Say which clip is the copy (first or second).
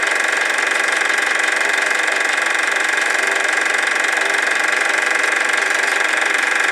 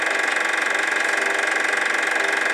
first